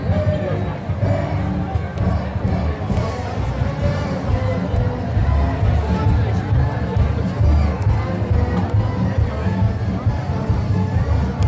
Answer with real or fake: real